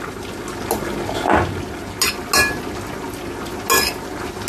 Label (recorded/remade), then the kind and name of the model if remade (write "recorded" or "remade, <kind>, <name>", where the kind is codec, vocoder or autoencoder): recorded